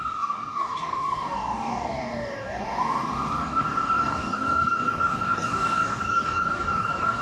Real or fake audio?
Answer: fake